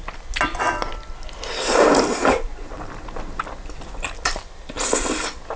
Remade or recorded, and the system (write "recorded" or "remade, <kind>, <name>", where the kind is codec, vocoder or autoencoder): recorded